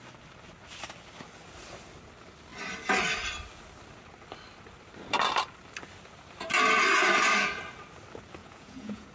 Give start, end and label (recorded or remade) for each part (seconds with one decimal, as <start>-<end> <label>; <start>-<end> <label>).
0.0-8.4 recorded; 8.4-9.1 remade